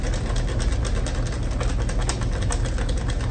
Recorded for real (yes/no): yes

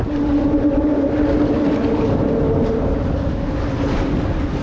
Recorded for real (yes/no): yes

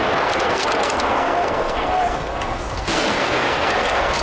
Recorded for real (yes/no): no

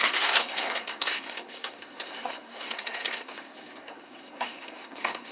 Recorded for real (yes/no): no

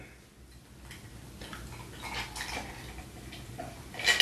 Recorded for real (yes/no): yes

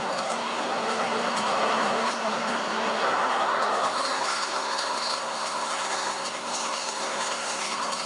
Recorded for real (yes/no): no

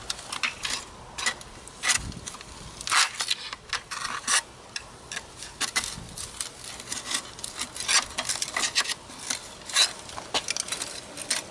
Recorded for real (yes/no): yes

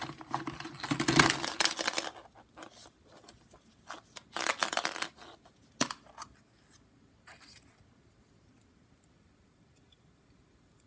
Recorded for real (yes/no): yes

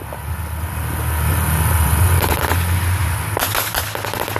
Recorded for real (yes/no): yes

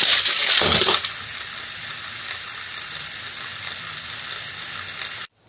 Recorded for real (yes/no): yes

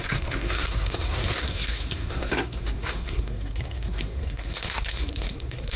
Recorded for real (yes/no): no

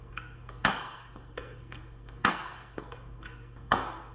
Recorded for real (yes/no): no